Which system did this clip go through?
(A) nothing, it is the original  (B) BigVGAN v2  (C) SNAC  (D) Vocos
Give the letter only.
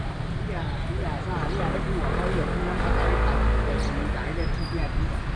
A